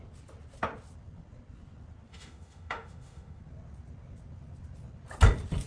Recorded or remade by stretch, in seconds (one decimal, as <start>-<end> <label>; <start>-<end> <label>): 0.0-2.1 recorded; 2.1-3.4 remade; 3.4-5.7 recorded